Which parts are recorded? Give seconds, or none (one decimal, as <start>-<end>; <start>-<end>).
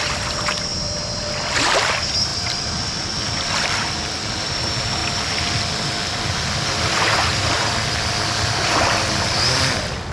5.0-7.3